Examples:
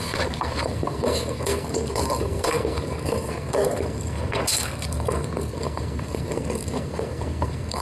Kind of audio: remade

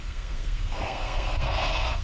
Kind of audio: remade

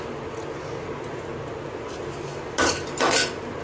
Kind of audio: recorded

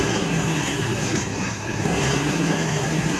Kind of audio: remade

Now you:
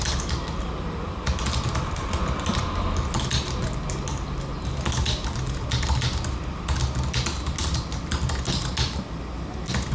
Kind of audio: recorded